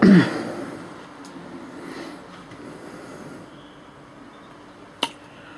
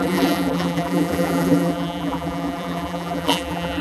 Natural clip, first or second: first